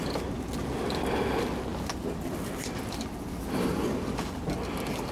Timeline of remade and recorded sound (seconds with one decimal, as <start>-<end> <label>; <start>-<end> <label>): 0.0-5.1 recorded